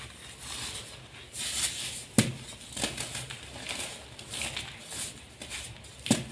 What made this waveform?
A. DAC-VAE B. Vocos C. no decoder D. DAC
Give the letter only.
C